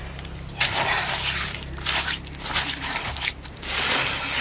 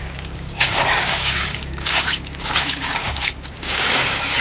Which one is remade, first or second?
second